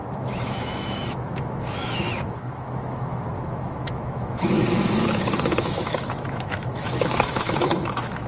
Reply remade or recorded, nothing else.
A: remade